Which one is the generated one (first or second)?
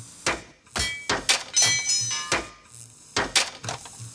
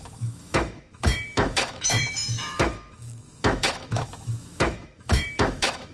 second